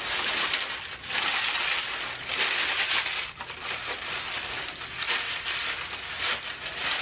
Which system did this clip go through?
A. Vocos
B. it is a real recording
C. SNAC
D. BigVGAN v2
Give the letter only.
B